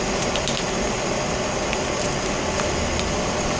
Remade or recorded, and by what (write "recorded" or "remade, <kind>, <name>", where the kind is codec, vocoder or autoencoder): recorded